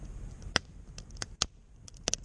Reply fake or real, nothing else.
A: real